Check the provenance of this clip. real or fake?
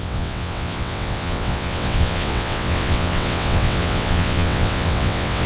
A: fake